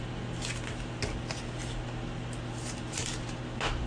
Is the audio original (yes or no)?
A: yes